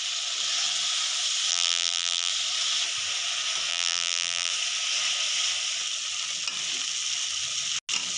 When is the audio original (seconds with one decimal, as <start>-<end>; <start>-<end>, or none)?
0.0-1.5; 2.3-3.7; 4.5-8.2